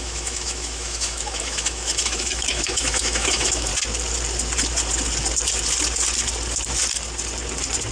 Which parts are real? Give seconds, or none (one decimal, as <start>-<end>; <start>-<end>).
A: 3.7-7.9